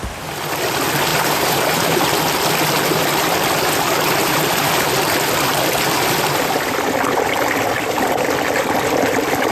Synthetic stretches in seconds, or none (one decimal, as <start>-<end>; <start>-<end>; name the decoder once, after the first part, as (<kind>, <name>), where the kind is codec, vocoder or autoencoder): 1.1-2.0 (vocoder, BigVGAN v2); 4.2-4.9